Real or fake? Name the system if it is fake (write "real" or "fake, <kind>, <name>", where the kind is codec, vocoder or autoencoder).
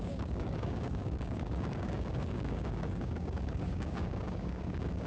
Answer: fake, codec, DAC